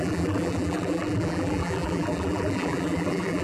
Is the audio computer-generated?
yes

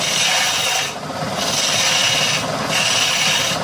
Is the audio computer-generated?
no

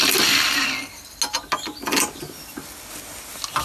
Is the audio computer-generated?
no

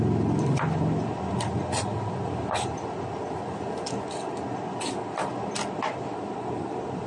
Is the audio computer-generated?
no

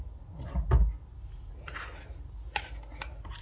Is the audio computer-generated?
no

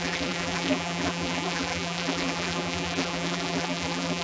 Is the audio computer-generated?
yes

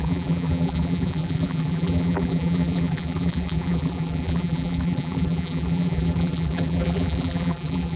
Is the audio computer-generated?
yes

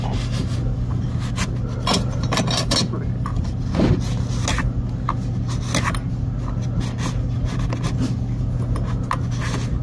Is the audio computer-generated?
no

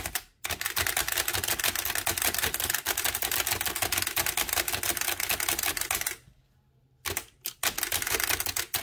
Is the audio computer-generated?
no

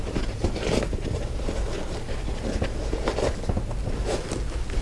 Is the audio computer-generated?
no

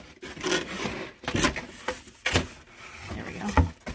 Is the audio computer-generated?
no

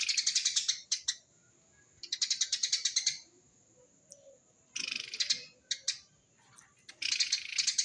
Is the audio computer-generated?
no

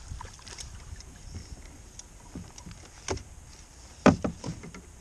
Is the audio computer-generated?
yes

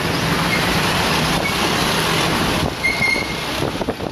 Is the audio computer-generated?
no